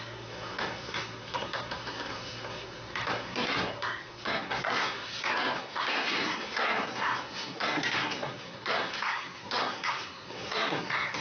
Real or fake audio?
fake